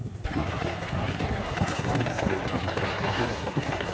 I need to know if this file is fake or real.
fake